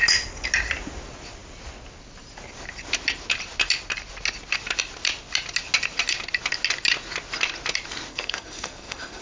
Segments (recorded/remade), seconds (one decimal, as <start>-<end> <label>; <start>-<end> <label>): 0.0-8.1 recorded; 8.1-9.2 remade